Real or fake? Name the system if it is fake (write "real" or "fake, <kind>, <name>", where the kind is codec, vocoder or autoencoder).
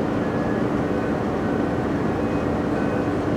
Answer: real